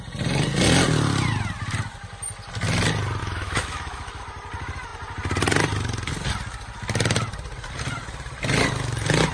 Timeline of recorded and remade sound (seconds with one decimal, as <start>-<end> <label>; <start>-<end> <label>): 0.0-3.2 recorded; 3.2-4.2 remade; 4.2-9.3 recorded